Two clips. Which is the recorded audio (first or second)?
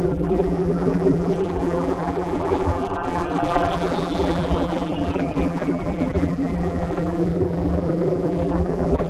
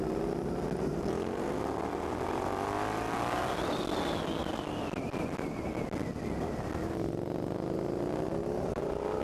second